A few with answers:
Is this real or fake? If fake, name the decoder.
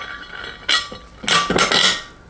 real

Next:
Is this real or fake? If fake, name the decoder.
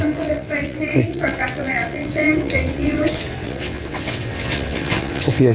fake, vocoder, WaveNeXt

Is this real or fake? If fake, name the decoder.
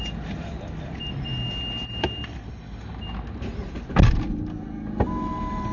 real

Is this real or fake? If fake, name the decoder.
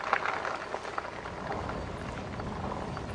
real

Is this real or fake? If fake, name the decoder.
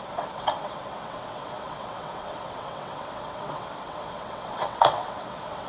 fake, vocoder, WaveNeXt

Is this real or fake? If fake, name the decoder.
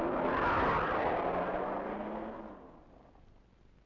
real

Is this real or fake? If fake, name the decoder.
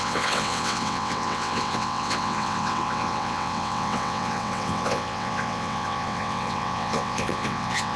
fake, vocoder, WaveNeXt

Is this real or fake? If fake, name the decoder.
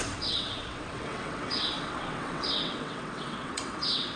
fake, vocoder, WaveNeXt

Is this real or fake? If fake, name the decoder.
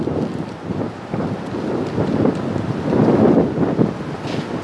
real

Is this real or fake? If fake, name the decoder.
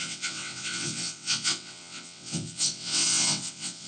fake, vocoder, WaveNeXt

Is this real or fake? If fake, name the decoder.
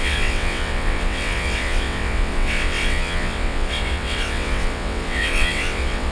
fake, vocoder, WaveNeXt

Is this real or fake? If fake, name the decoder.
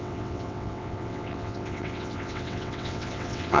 fake, vocoder, WaveNeXt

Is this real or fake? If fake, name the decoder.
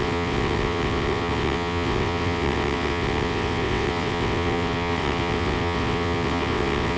fake, vocoder, WaveNeXt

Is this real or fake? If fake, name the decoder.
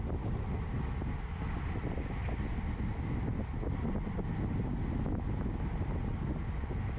real